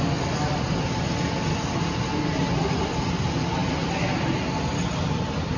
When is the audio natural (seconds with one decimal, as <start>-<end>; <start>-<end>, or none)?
0.0-5.6